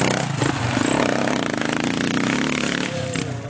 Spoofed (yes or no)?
no